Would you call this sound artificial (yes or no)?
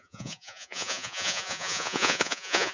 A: yes